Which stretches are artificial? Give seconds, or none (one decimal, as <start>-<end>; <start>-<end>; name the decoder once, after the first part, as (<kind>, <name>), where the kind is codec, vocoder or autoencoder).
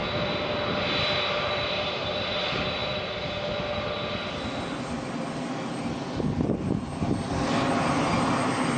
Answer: none